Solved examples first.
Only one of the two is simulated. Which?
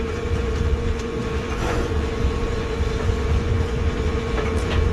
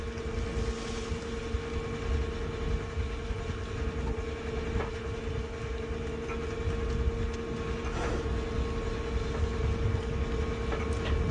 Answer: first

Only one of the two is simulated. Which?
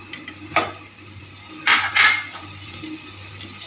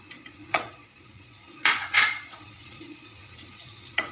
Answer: second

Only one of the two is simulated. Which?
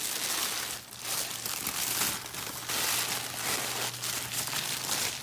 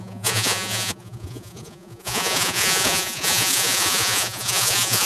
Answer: second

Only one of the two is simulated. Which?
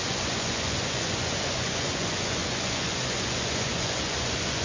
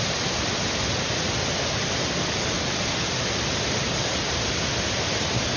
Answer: first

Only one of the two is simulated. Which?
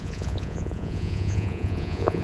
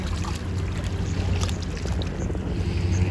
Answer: first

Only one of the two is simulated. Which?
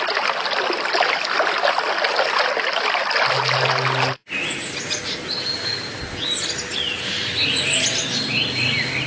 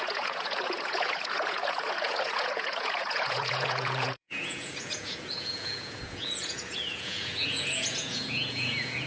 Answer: second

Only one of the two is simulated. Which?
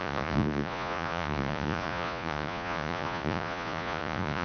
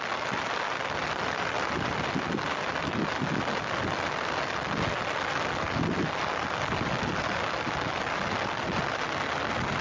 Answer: first